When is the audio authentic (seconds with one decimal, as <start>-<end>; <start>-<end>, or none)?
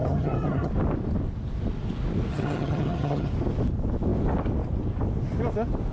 0.7-2.3; 3.3-5.9